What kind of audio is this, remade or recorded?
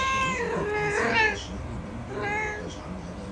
recorded